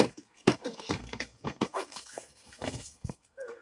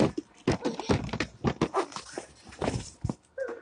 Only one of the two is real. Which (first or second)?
second